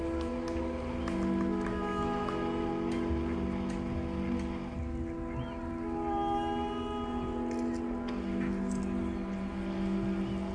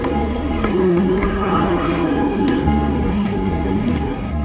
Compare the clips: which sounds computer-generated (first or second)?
second